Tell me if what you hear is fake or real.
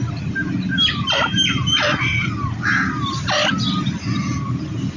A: real